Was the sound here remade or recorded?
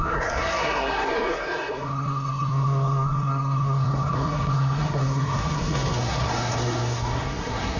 remade